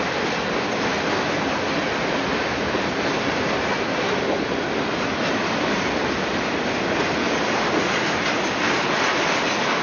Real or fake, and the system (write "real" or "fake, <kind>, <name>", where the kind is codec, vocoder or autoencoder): real